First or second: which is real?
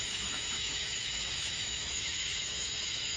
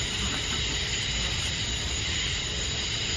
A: second